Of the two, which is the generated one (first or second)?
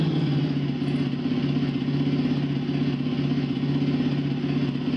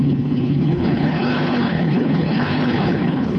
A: second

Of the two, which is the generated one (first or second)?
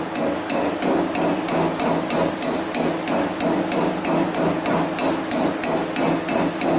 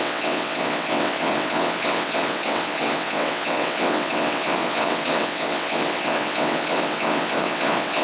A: second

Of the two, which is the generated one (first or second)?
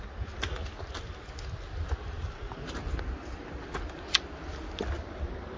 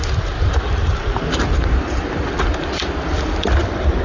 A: second